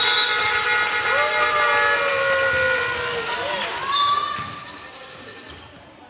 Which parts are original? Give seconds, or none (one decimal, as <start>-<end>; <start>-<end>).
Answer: 0.0-6.1